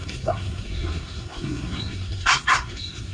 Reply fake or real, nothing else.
fake